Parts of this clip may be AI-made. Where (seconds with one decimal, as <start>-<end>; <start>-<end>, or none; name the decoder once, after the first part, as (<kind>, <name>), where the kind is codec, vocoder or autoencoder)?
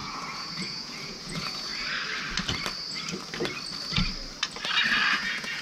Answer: 0.0-1.7 (vocoder, Vocos); 5.1-5.6